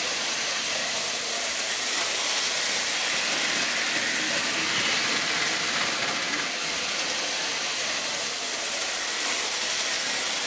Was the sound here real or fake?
real